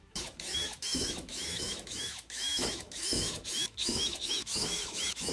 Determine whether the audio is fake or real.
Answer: fake